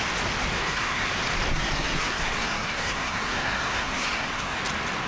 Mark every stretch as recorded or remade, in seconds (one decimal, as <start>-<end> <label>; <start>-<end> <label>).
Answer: 0.0-0.5 recorded; 0.5-1.1 remade; 1.1-1.5 recorded; 1.5-4.6 remade; 4.6-5.1 recorded